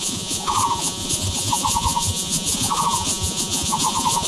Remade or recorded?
remade